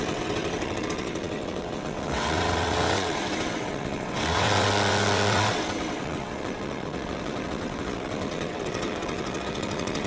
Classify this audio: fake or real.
fake